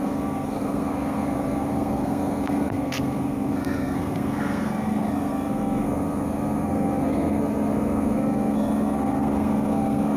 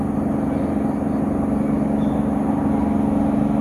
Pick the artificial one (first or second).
first